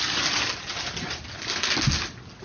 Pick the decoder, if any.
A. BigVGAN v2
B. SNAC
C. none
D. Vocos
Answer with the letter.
C